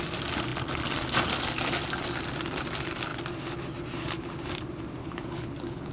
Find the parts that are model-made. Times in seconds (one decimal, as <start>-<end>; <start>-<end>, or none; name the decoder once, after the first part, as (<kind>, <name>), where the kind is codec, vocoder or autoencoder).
5.0-5.9 (codec, HILCodec)